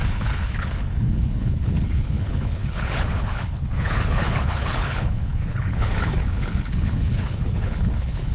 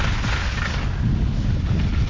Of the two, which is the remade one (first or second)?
first